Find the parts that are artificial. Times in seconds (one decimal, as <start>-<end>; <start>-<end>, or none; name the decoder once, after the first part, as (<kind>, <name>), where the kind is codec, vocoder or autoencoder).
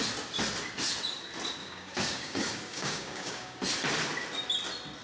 1.6-3.6 (codec, DAC)